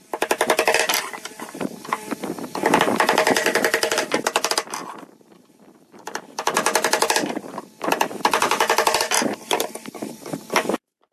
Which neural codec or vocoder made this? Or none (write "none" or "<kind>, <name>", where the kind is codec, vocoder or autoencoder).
vocoder, BigVGAN v2